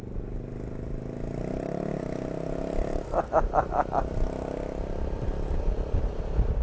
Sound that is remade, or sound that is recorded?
recorded